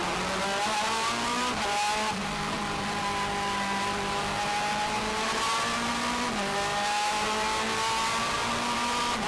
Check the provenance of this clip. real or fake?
real